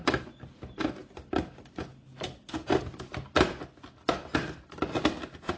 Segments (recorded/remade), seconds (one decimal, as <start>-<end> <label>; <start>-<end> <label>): 0.0-5.6 recorded